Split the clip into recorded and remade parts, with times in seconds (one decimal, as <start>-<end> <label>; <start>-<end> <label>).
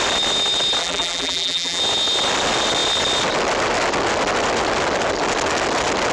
0.0-0.8 recorded; 0.8-1.8 remade; 1.8-6.1 recorded